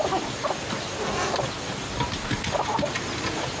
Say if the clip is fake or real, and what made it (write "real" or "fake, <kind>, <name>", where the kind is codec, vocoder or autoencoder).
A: real